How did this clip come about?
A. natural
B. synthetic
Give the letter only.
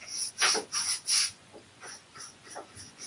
B